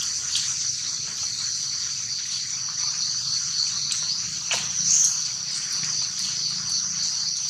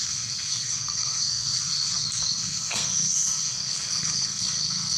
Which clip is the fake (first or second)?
second